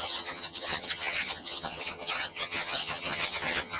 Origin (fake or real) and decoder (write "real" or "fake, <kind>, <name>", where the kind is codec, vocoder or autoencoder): fake, vocoder, HiFi-GAN